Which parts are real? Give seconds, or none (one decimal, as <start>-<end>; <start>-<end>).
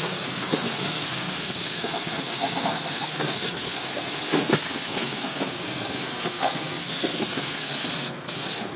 none